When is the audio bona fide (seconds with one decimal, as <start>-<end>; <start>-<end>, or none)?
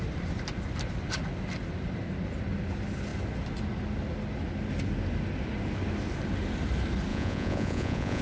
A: 0.0-7.1